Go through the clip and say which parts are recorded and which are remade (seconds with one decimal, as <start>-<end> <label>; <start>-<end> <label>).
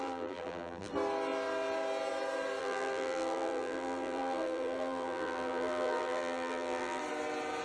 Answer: 0.0-0.9 remade; 0.9-2.6 recorded; 2.6-7.0 remade; 7.0-7.6 recorded